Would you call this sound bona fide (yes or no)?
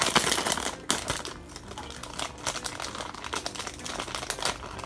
yes